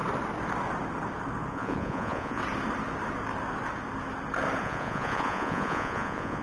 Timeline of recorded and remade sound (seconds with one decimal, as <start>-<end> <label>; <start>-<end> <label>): 0.0-1.5 recorded; 1.5-2.4 remade; 2.4-4.6 recorded; 4.6-6.4 remade